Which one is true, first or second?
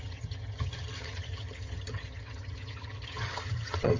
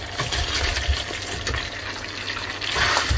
second